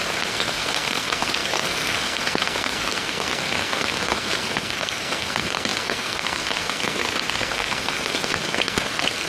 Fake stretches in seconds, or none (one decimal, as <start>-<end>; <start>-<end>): 0.0-9.3